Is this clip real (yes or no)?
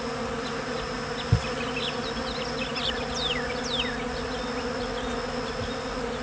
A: yes